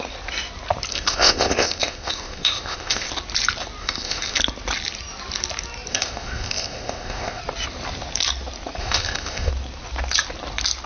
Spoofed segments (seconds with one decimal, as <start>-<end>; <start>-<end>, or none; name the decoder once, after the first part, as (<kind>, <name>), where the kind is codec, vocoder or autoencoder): 0.9-3.1 (codec, ZipCodec); 3.8-4.4; 5.9-7.4; 8.8-9.5

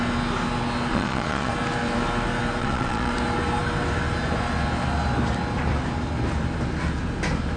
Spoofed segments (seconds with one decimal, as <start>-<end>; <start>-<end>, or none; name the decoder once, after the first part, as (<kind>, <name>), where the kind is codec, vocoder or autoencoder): 0.9-1.5 (vocoder, Vocos); 2.6-3.1

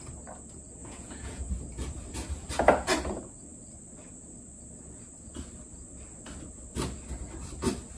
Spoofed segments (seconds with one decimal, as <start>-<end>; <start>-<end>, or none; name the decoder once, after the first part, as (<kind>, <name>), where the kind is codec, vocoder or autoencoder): 0.8-1.5 (vocoder, Vocos)